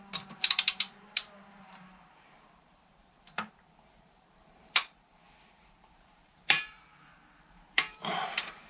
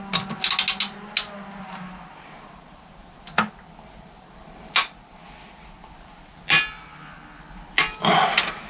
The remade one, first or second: first